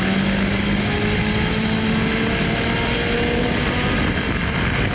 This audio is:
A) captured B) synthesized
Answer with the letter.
A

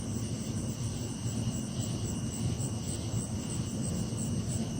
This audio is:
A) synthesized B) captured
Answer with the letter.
B